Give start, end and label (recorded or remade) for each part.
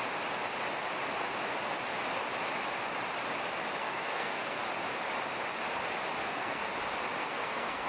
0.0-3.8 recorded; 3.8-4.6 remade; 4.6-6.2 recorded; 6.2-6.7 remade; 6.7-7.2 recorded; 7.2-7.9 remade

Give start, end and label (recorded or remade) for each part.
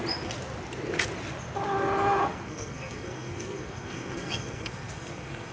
0.0-2.3 recorded; 2.3-5.5 remade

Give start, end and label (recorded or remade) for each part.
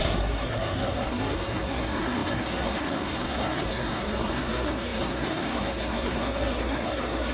0.0-7.3 remade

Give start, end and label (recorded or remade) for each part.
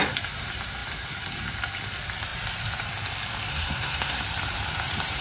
0.0-3.5 recorded; 3.5-4.2 remade; 4.2-5.2 recorded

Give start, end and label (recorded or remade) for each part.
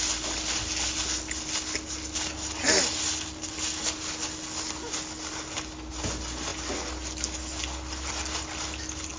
0.0-9.2 recorded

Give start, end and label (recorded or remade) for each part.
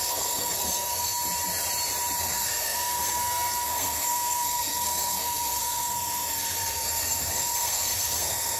0.0-1.1 remade; 1.1-2.2 recorded; 2.2-8.6 remade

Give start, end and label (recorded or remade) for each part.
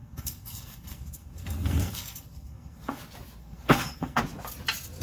0.0-3.0 remade; 3.0-3.4 recorded; 3.4-4.2 remade; 4.2-5.0 recorded